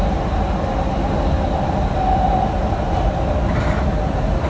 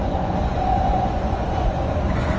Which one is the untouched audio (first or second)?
first